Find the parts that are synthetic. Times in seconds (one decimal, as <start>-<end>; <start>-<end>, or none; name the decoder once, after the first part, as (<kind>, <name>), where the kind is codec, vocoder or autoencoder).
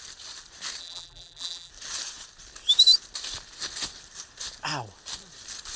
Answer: 0.8-1.7 (vocoder, BigVGAN v2)